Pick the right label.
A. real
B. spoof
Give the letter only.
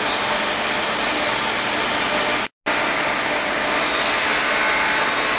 A